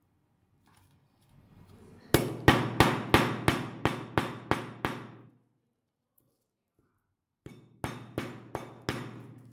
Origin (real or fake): real